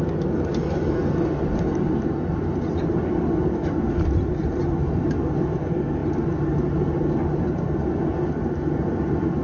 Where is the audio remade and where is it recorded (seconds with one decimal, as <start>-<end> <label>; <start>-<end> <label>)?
0.0-9.4 recorded